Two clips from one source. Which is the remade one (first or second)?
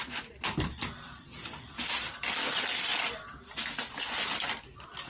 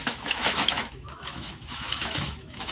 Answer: second